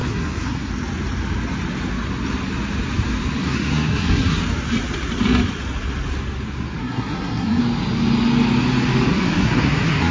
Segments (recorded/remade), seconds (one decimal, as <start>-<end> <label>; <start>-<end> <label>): 0.0-0.7 remade; 0.7-3.4 recorded; 3.4-4.4 remade; 4.4-6.8 recorded; 6.8-7.6 remade; 7.6-9.1 recorded; 9.1-10.1 remade